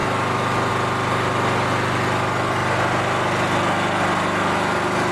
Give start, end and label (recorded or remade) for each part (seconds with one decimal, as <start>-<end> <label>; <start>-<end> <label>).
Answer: 0.0-5.1 recorded